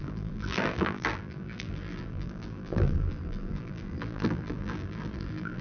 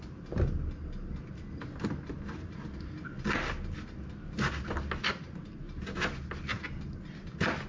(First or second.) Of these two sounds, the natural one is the second